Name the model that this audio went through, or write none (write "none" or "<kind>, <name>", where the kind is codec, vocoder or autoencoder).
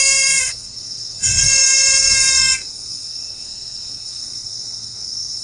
codec, SNAC